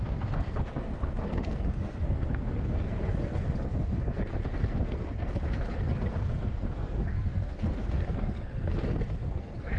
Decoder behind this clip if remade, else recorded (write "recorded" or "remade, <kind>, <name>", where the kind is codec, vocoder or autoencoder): remade, codec, SNAC